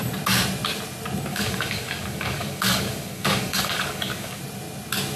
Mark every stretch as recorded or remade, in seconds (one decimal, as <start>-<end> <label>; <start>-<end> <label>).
0.0-1.3 recorded; 1.3-4.4 remade; 4.4-5.2 recorded